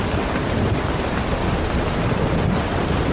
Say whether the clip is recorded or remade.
recorded